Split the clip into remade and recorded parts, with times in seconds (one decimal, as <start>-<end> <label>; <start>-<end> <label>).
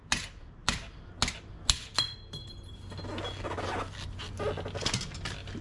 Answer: 0.0-5.6 recorded